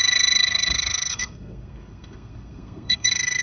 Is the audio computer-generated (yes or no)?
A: yes